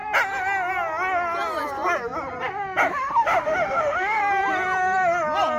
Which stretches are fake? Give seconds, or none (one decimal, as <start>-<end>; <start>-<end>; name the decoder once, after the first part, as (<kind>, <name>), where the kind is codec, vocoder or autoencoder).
2.9-4.2 (autoencoder, DAC-VAE)